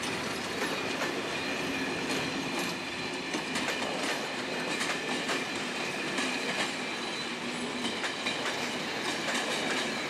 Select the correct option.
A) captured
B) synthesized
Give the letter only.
A